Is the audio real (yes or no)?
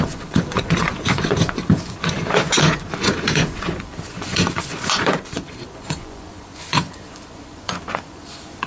no